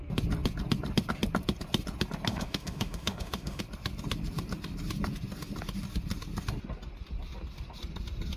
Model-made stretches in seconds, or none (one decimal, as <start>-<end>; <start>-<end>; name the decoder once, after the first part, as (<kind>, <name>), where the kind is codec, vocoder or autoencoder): 2.3-3.6 (autoencoder, DAC-VAE)